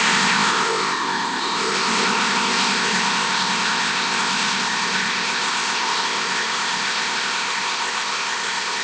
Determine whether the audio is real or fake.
fake